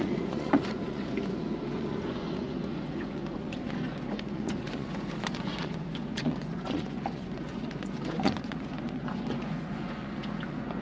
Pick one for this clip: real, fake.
fake